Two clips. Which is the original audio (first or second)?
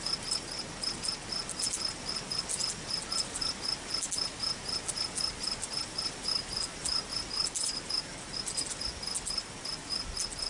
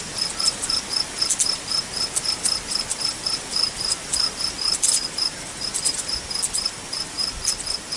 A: first